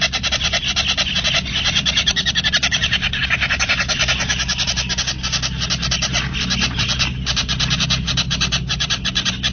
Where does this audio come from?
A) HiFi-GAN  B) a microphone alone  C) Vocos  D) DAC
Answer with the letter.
B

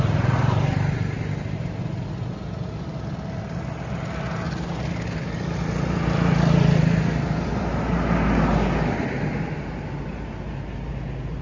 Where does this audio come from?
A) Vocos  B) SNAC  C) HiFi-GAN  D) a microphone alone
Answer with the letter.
D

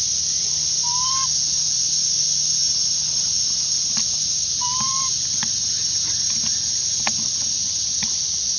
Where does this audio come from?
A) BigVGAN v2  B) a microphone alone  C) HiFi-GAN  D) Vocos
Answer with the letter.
B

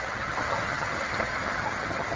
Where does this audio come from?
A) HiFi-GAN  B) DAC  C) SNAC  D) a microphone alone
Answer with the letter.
A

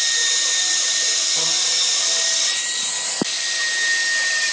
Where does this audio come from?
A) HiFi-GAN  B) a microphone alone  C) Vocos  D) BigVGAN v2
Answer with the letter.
B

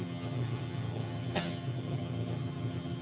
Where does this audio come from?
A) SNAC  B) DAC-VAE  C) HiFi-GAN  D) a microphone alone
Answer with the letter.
C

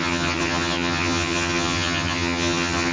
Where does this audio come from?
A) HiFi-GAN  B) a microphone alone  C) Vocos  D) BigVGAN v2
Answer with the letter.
A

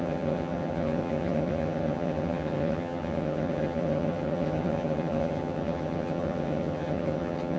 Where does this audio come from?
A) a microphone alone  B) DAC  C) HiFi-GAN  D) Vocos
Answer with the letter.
C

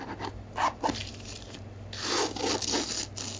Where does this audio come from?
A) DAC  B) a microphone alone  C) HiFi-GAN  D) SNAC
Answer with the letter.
B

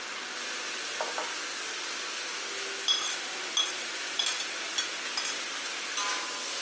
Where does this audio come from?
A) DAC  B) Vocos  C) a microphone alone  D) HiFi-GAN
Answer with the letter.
C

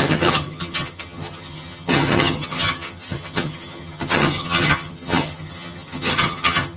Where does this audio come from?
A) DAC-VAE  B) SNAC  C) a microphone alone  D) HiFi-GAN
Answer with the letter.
D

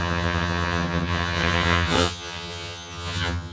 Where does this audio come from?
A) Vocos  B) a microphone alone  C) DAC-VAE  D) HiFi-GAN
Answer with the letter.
D